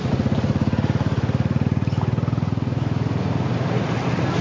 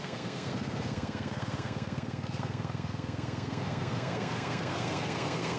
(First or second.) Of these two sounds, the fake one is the second